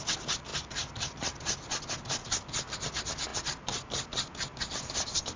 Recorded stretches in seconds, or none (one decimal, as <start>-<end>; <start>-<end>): 0.0-5.4